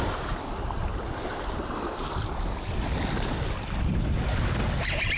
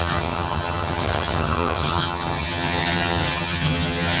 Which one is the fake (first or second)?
second